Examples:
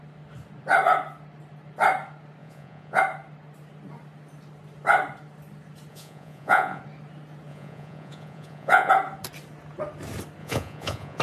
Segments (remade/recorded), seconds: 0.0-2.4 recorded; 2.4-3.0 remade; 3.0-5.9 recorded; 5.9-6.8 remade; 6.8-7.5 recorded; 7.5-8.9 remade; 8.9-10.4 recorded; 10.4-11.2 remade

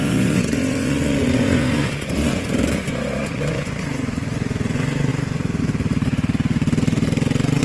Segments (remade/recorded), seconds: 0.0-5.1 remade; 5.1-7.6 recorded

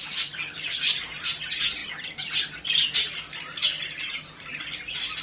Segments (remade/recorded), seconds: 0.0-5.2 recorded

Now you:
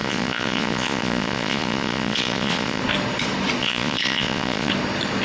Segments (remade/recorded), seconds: 0.0-2.8 remade; 2.8-3.6 recorded; 3.6-4.7 remade; 4.7-5.2 recorded

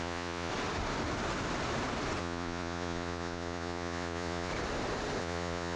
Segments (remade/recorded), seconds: 0.0-0.5 remade; 0.5-2.2 recorded; 2.2-4.5 remade; 4.5-5.2 recorded; 5.2-5.8 remade

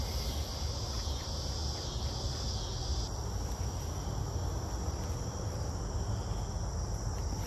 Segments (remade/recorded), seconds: 0.0-7.5 recorded

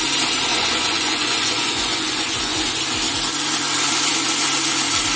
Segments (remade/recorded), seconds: 0.0-0.5 recorded; 0.5-2.7 remade; 2.7-5.2 recorded

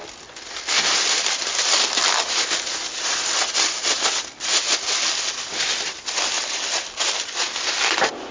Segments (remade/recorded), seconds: 0.0-8.3 recorded